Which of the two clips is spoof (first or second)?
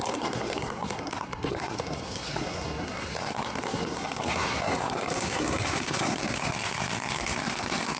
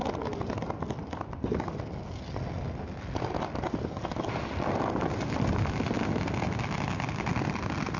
first